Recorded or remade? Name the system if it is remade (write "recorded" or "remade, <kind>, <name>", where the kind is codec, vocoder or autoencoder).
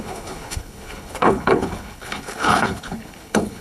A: remade, codec, HILCodec